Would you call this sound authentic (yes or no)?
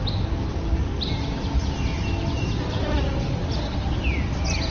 yes